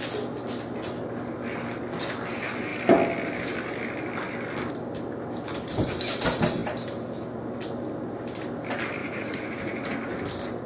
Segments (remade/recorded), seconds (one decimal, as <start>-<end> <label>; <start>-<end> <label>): 0.0-9.0 recorded; 9.0-10.1 remade; 10.1-10.7 recorded